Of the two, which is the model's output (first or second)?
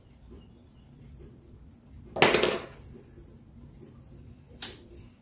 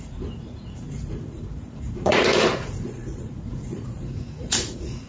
second